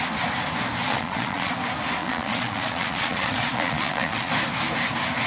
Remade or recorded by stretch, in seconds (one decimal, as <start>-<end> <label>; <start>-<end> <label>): 0.0-0.9 recorded; 0.9-1.5 remade; 1.5-2.0 recorded; 2.0-4.3 remade; 4.3-5.3 recorded